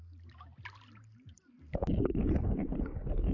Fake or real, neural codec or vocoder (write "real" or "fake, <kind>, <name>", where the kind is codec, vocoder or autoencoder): real